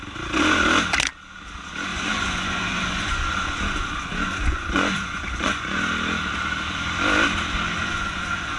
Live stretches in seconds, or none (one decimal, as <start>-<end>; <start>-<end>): 0.0-1.9; 5.9-7.8